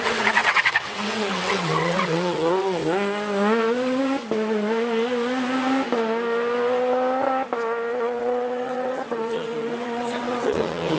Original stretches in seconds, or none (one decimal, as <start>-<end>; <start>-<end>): 2.8-8.0